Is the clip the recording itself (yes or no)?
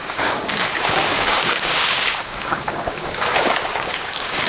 no